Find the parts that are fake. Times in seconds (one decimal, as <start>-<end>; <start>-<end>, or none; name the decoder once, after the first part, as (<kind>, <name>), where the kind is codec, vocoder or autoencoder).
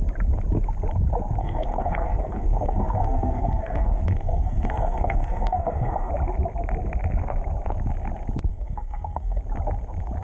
1.4-6.1 (codec, SNAC); 8.5-9.4